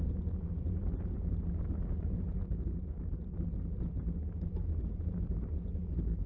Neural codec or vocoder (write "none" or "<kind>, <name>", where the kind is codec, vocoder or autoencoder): none